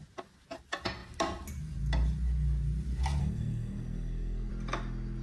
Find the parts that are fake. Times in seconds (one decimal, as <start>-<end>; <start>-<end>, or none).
3.2-4.5